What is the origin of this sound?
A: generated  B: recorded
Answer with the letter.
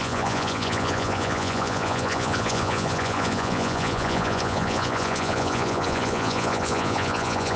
A